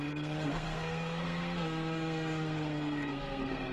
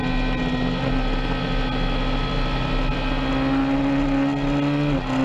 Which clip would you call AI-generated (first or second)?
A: first